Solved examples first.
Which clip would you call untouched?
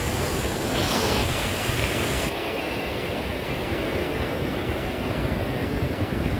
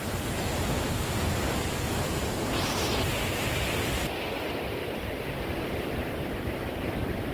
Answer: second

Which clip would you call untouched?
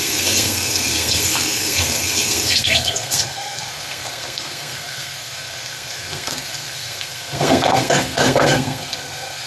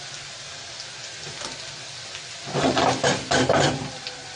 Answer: second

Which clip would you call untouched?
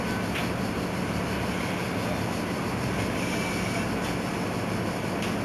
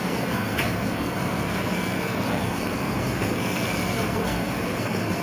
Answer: first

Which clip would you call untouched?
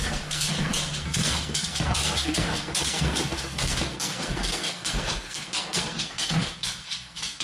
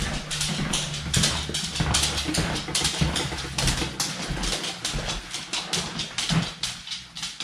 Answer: second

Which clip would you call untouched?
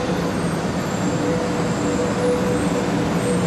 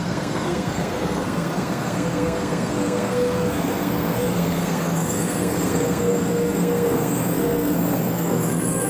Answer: first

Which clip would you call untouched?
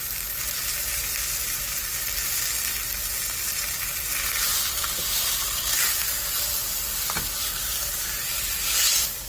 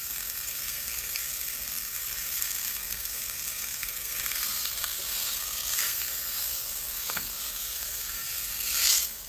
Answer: first